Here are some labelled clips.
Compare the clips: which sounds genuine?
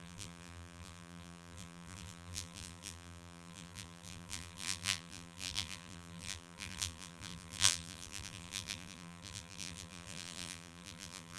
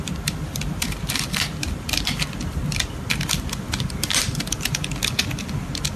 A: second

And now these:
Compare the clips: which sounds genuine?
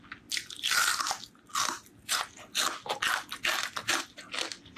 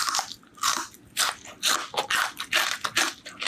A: first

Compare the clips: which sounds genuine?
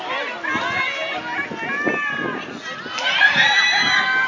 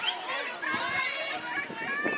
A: first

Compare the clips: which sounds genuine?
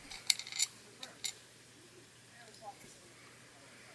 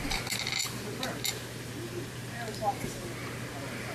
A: second